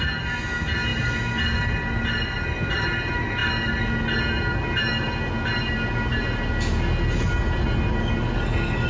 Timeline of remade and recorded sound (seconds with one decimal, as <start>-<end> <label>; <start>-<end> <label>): 0.0-8.9 recorded